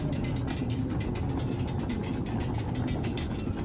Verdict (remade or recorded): recorded